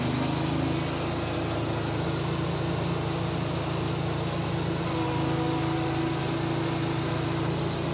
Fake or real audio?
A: real